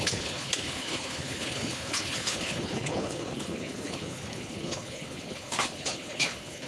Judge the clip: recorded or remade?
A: remade